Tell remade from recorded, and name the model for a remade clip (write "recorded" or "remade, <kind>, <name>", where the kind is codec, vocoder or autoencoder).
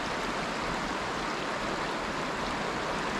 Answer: recorded